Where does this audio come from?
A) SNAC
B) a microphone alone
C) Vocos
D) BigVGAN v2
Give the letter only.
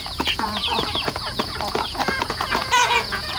C